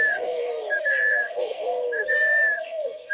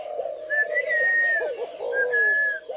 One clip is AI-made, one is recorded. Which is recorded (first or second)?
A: second